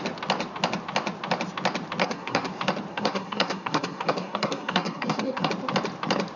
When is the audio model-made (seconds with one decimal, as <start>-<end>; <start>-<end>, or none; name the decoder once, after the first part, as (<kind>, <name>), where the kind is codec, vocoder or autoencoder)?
2.0-2.5 (codec, SNAC); 2.9-5.5